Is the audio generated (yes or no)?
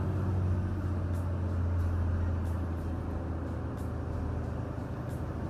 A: no